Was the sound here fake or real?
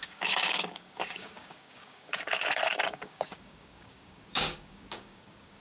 fake